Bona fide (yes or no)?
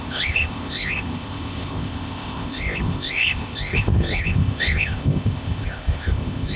no